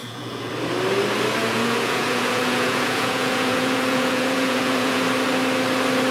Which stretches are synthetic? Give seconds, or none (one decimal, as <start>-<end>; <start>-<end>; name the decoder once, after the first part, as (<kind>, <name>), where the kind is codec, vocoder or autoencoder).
0.0-0.5 (vocoder, Vocos); 1.4-5.0